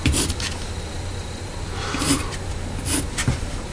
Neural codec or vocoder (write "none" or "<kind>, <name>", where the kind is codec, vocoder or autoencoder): none